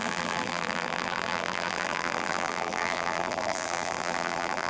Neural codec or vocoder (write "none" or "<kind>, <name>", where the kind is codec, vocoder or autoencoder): vocoder, BigVGAN v2